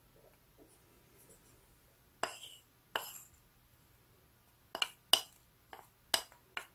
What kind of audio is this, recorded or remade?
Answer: recorded